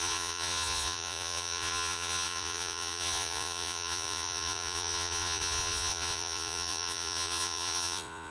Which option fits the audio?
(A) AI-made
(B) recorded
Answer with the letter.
A